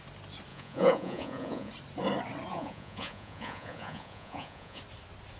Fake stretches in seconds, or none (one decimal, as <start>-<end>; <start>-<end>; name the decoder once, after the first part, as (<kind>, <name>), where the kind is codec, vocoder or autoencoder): 0.5-1.7 (vocoder, Vocos); 2.5-4.8